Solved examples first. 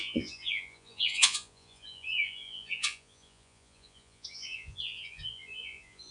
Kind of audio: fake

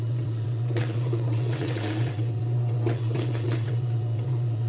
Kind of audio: fake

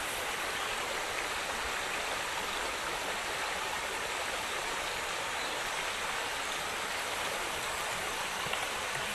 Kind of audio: real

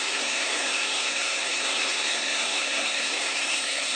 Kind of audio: fake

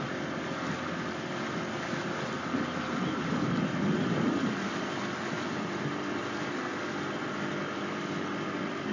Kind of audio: fake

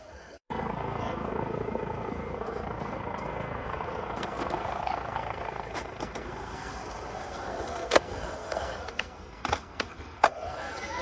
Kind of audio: fake